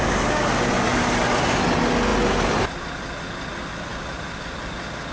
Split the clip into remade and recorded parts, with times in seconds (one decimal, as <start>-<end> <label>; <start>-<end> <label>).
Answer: 0.0-5.1 recorded